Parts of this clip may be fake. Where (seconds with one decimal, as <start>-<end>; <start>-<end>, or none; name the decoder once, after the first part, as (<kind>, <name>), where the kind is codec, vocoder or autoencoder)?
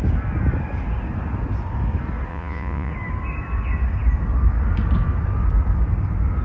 2.3-2.9 (vocoder, Vocos)